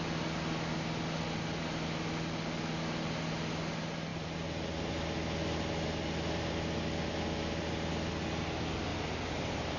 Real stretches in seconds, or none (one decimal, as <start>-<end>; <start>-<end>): 0.0-4.1; 4.9-8.9